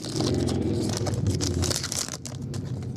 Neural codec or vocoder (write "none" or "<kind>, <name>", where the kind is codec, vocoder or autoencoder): none